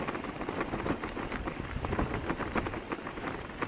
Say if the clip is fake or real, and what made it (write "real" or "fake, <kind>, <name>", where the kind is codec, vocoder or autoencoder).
real